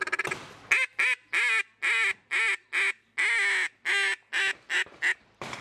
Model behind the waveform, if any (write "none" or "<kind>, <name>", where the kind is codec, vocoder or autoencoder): none